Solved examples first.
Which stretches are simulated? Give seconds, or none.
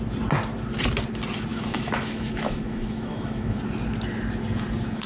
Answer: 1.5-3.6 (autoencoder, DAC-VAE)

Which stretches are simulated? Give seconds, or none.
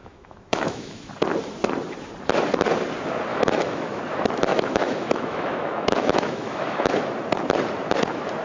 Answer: 0.0-1.1 (autoencoder, DAC-VAE); 3.3-4.0; 4.5-6.9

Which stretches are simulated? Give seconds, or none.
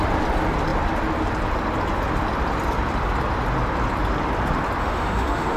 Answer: 4.8-5.6 (autoencoder, DAC-VAE)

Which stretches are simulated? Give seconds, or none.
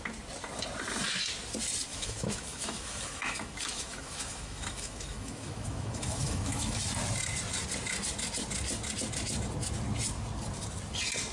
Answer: 1.9-6.8 (autoencoder, DAC-VAE)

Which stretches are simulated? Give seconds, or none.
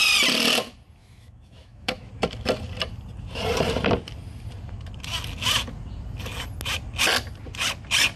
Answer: 1.0-2.1 (autoencoder, DAC-VAE)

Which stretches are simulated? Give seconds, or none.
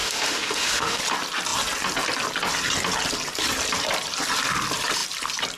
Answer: 0.0-1.0 (autoencoder, DAC-VAE)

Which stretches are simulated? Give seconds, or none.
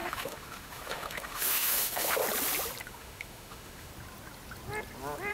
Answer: 0.0-2.2 (autoencoder, DAC-VAE); 2.8-3.9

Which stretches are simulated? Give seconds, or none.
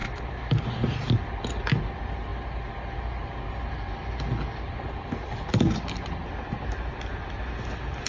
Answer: 0.0-0.6 (autoencoder, DAC-VAE)